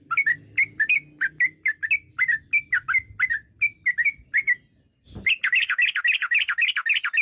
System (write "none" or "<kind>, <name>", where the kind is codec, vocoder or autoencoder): none